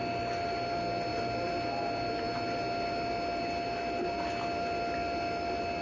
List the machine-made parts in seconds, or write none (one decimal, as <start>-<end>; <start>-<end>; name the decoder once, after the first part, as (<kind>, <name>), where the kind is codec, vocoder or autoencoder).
none